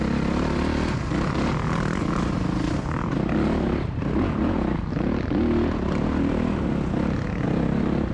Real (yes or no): yes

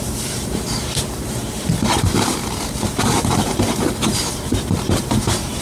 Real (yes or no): no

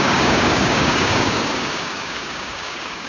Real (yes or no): no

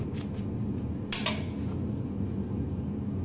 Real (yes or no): yes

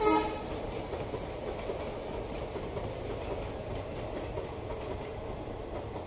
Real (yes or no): yes